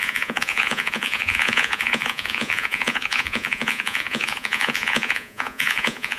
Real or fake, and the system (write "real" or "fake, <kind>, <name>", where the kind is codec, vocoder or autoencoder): fake, vocoder, Vocos